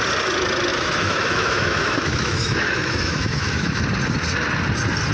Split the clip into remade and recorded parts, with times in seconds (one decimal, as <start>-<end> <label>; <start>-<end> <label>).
0.0-0.7 recorded; 0.7-3.8 remade; 3.8-5.1 recorded